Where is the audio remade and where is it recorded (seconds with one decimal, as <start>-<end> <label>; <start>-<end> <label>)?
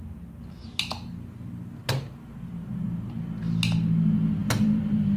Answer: 0.0-4.4 recorded; 4.4-5.2 remade